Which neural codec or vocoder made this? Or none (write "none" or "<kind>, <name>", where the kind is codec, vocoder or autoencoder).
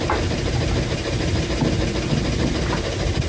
none